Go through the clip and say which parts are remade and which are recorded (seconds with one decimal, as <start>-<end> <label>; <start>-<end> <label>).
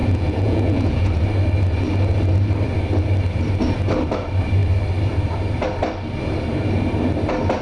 0.0-1.1 remade; 1.1-7.6 recorded